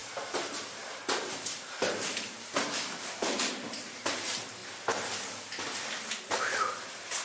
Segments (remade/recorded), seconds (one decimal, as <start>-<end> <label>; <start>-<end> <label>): 0.0-0.7 recorded; 0.7-4.6 remade; 4.6-6.4 recorded; 6.4-7.2 remade